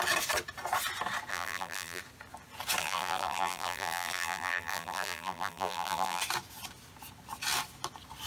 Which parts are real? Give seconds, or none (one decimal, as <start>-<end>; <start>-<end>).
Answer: 0.0-1.3; 2.0-2.8; 6.2-8.3